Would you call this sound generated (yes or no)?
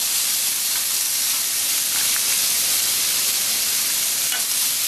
no